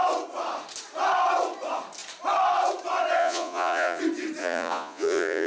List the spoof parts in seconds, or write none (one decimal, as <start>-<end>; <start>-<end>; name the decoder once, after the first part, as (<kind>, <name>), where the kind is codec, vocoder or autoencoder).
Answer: 3.2-4.0 (vocoder, Vocos); 4.4-5.5